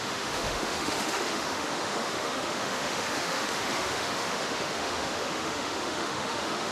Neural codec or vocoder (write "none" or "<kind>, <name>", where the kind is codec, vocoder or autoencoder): autoencoder, DAC-VAE